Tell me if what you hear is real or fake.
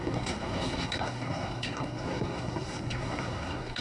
fake